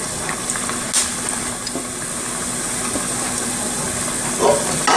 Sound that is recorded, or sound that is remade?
recorded